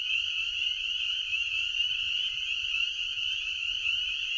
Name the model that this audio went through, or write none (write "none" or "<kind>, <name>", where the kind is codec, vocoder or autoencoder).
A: vocoder, BigVGAN v2